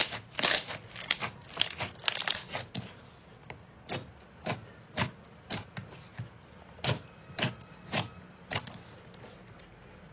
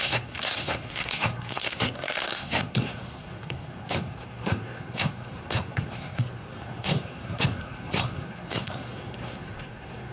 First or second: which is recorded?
first